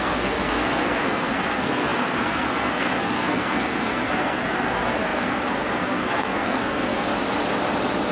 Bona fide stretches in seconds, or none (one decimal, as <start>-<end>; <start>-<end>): 7.1-8.1